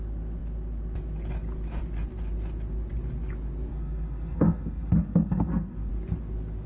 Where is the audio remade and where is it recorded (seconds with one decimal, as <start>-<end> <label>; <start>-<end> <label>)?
0.0-3.7 recorded; 3.7-5.9 remade; 5.9-6.7 recorded